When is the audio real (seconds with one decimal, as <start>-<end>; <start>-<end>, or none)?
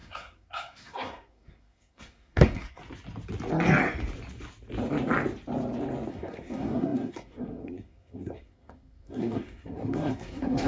2.8-6.1